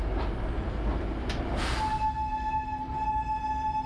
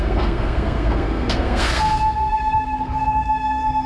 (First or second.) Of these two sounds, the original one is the first